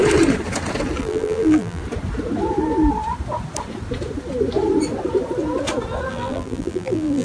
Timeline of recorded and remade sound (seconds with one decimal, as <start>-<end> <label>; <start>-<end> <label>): 0.0-1.0 recorded; 1.0-1.8 remade; 1.8-6.1 recorded; 6.1-7.2 remade